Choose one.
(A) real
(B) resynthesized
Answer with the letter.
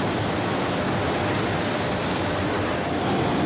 A